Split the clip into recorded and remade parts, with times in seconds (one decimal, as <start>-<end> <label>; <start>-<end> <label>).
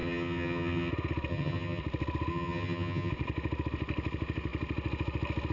0.0-0.9 remade; 0.9-1.3 recorded; 1.3-1.8 remade; 1.8-2.3 recorded; 2.3-3.1 remade; 3.1-5.5 recorded